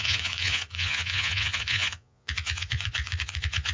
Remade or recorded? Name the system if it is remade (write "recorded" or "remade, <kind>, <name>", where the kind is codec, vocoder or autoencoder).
remade, vocoder, Vocos